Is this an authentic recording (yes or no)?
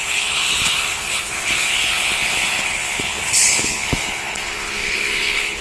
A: no